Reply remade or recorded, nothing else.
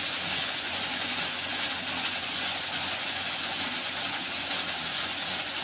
remade